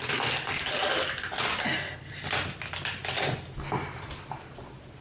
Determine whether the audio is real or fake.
real